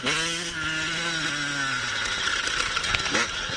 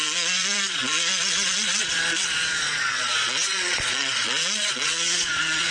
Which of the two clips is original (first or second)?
first